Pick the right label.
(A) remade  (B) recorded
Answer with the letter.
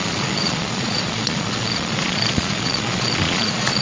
A